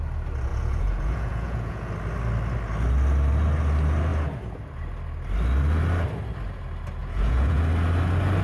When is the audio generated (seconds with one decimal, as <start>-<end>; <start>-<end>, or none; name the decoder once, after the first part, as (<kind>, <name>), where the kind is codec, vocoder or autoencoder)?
0.5-1.9 (vocoder, Vocos); 7.0-7.6